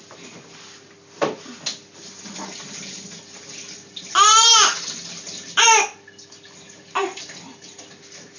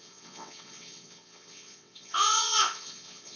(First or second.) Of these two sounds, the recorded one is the first